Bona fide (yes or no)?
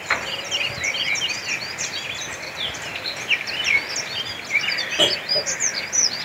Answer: yes